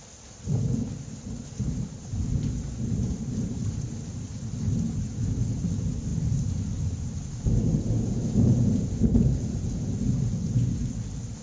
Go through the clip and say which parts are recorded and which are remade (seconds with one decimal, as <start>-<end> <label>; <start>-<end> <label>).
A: 0.0-2.3 recorded; 2.3-3.7 remade; 3.7-11.4 recorded